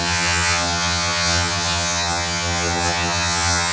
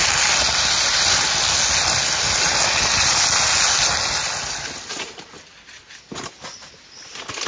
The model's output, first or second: first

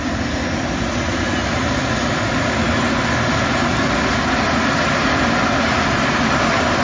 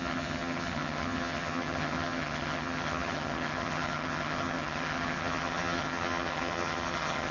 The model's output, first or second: second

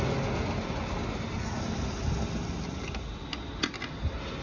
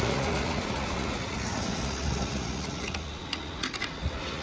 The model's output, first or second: second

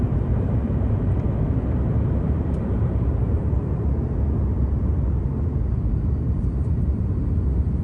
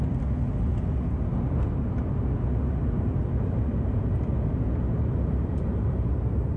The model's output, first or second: first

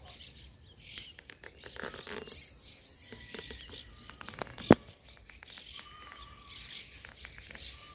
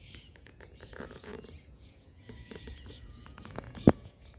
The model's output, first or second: second